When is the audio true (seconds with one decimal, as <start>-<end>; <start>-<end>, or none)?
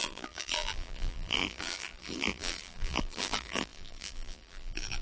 none